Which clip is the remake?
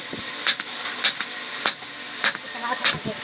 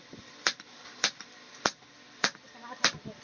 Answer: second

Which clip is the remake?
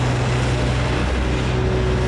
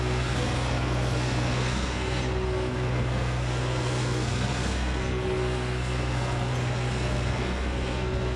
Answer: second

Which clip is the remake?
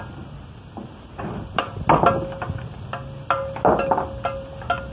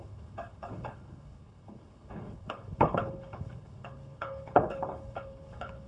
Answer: second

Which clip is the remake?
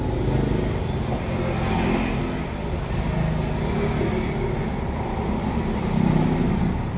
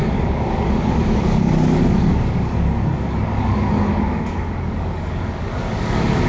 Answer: second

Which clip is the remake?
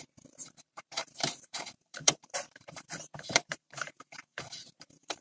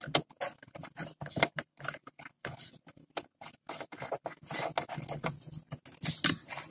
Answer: first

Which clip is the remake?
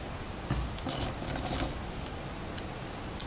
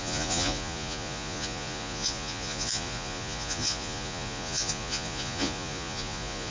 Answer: second